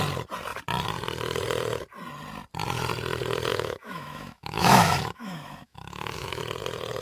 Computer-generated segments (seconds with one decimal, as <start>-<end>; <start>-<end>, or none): 3.5-6.4